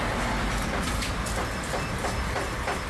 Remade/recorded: recorded